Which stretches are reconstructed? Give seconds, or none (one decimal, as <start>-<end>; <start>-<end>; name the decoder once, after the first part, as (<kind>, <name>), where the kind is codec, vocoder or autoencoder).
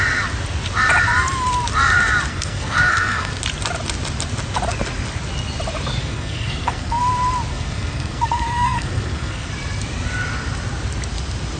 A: 2.3-3.3 (codec, SNAC); 6.0-7.0; 7.5-9.5